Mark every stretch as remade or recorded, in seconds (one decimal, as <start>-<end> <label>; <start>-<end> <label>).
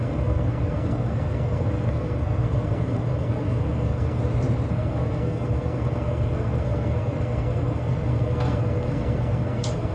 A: 0.0-4.2 remade; 4.2-4.7 recorded; 4.7-9.9 remade